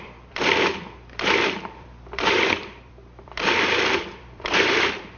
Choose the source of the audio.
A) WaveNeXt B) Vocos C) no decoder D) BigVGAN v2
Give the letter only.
D